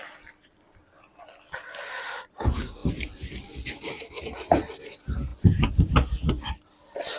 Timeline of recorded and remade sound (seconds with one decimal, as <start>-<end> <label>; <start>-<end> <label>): 0.0-7.2 recorded